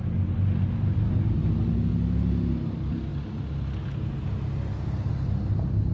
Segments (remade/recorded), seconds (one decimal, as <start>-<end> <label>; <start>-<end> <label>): 0.0-5.9 recorded